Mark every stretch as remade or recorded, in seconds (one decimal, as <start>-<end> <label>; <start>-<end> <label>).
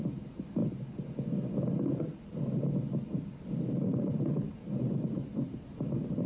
0.0-0.6 remade; 0.6-3.6 recorded; 3.6-6.3 remade